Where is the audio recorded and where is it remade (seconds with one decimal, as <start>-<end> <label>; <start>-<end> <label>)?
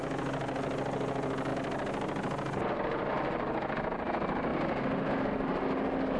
0.0-6.2 recorded